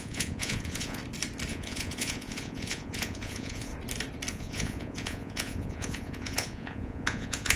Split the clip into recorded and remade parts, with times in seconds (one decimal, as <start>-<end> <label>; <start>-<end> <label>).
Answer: 0.0-1.0 remade; 1.0-1.5 recorded; 1.5-3.7 remade; 3.7-4.3 recorded; 4.3-7.6 remade